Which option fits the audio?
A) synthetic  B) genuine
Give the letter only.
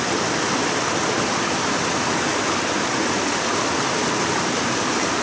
B